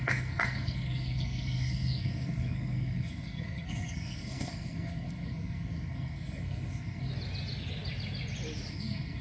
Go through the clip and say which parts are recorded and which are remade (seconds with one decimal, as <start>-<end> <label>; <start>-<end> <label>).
0.0-7.1 remade; 7.1-8.7 recorded; 8.7-9.2 remade